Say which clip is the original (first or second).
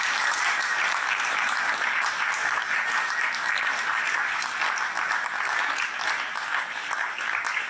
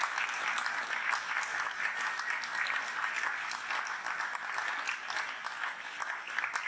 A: second